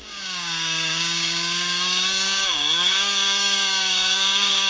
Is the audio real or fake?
fake